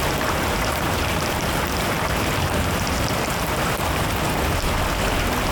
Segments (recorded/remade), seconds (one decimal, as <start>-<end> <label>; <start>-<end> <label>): 0.0-0.7 recorded; 0.7-4.0 remade; 4.0-5.5 recorded